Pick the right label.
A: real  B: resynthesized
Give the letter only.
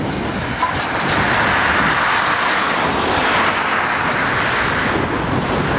A